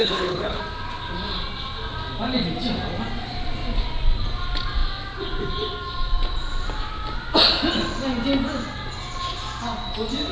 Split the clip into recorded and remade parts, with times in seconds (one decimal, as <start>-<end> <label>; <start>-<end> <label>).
0.0-0.6 remade; 0.6-10.3 recorded